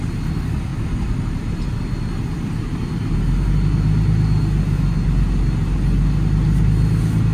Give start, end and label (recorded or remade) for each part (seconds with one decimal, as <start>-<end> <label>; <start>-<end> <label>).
0.0-0.7 recorded; 0.7-1.8 remade; 1.8-7.3 recorded